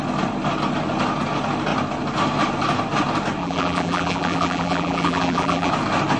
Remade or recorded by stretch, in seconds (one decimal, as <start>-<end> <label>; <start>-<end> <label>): 0.0-3.4 recorded; 3.4-5.7 remade; 5.7-6.2 recorded